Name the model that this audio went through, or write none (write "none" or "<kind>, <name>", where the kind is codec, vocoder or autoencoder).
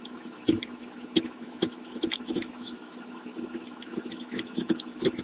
autoencoder, DAC-VAE